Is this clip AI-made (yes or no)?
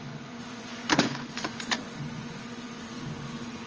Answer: yes